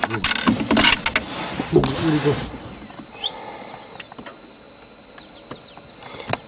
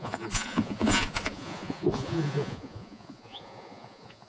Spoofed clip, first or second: second